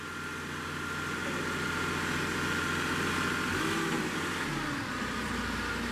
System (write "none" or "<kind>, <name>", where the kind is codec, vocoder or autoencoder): none